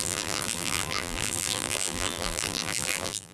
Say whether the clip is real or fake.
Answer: fake